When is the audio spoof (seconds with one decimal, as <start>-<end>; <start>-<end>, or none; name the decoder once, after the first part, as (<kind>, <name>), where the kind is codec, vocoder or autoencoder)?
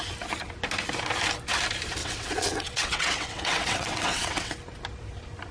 2.0-4.5 (vocoder, WaveNeXt)